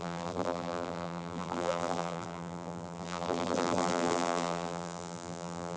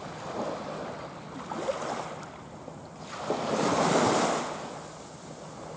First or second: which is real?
second